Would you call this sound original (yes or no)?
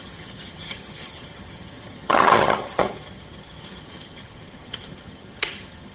no